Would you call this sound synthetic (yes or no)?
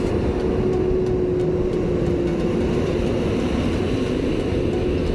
no